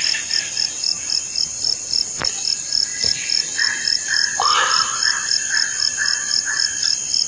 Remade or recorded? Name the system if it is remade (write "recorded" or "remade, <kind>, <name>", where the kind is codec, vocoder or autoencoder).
recorded